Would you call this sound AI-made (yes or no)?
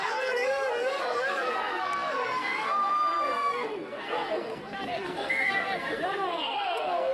yes